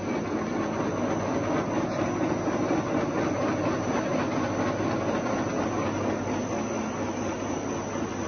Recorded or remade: recorded